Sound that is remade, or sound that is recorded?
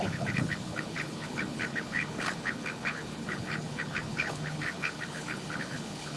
remade